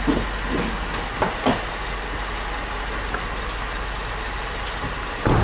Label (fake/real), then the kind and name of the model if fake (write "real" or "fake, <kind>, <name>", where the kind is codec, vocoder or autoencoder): real